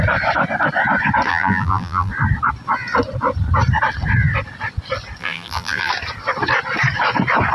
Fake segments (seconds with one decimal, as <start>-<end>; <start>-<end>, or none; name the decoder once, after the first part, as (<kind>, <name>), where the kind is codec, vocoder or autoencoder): 1.3-2.1 (vocoder, BigVGAN v2); 5.2-5.9